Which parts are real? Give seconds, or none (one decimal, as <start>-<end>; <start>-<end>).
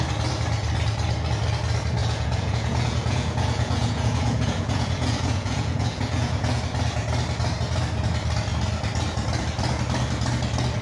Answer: 0.0-2.0; 6.6-10.8